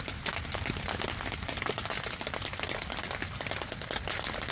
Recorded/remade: recorded